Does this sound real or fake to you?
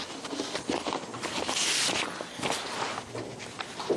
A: real